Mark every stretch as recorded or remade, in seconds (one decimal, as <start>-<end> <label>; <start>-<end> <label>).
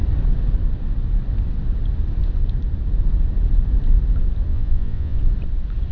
0.0-4.5 recorded; 4.5-5.2 remade; 5.2-5.9 recorded